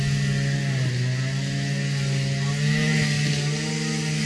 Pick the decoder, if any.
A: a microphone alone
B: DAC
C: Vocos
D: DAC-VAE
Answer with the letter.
A